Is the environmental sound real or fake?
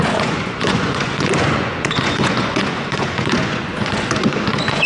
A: fake